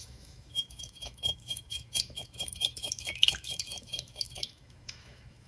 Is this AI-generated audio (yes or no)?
yes